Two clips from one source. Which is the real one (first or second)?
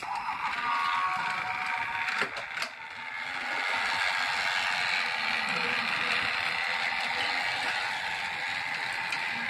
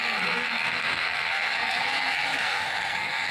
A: first